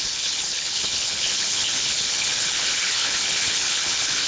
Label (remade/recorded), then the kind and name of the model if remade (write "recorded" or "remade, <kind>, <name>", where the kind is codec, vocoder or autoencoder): remade, codec, HILCodec